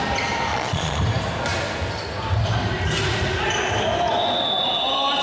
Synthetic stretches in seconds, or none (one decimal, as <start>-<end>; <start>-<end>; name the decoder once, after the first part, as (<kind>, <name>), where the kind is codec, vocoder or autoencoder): 0.5-1.0 (vocoder, Vocos)